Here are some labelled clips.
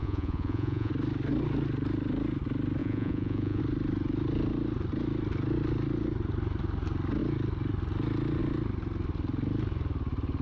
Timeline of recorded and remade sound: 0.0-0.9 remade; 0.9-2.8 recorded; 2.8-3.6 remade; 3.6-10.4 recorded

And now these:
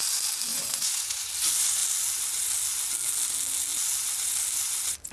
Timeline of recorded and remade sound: 0.0-0.5 recorded; 0.5-1.3 remade; 1.3-5.1 recorded